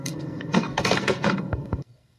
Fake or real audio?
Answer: fake